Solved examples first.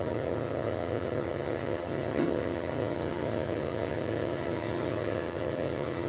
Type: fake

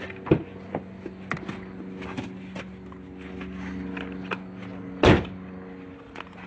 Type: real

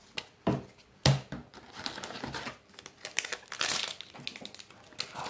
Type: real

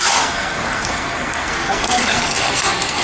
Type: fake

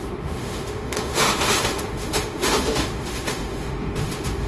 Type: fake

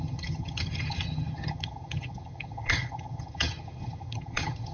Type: fake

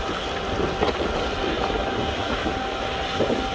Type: real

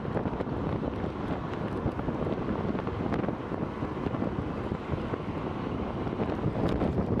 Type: real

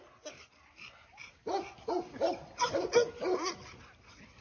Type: real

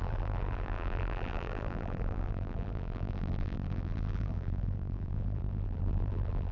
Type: fake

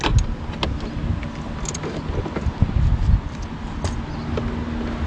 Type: real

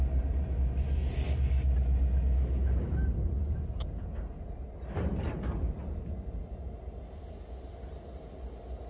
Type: real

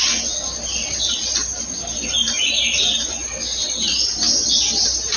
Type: real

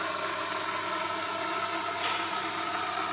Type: real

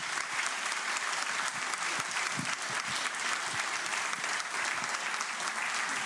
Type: real